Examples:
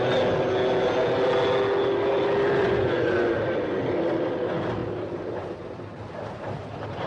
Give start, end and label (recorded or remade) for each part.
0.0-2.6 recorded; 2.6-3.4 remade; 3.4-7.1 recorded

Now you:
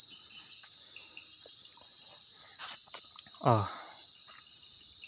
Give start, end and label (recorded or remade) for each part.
0.0-2.6 recorded; 2.6-3.1 remade; 3.1-5.1 recorded

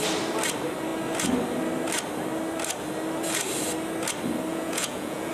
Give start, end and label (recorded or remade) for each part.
0.0-4.5 recorded; 4.5-5.3 remade

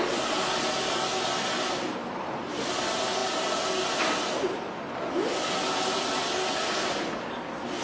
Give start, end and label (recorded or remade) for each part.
0.0-7.8 recorded

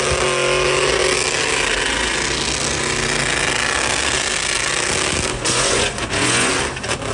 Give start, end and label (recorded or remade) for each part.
0.0-5.3 recorded; 5.3-6.5 remade; 6.5-7.1 recorded

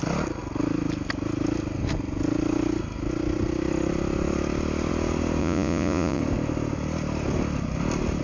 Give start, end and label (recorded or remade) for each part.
0.0-5.4 recorded; 5.4-6.2 remade; 6.2-8.2 recorded

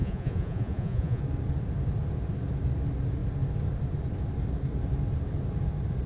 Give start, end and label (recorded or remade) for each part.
0.0-1.2 remade; 1.2-6.1 recorded